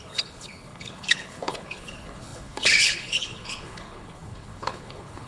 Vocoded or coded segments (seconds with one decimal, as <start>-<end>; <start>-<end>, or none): 0.0-5.3